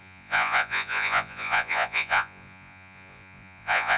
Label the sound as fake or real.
fake